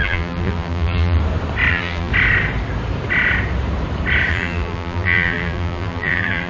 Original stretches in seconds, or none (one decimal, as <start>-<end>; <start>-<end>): 1.2-1.7; 2.1-4.3